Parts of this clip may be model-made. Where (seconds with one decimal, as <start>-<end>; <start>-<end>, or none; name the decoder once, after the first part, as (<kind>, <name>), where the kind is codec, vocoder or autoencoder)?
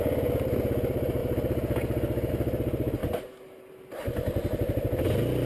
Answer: none